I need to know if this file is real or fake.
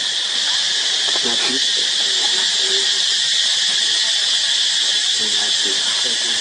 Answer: real